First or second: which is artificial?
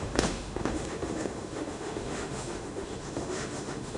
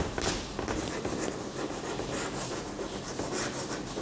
first